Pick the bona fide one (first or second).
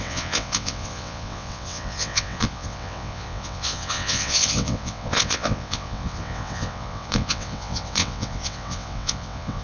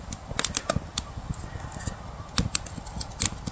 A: second